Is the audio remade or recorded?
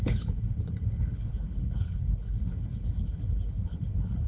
remade